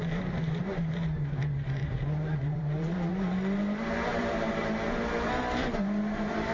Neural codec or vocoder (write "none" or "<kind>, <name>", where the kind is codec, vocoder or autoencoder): vocoder, BigVGAN v2